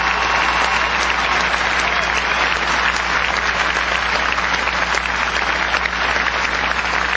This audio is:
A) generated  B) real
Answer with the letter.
B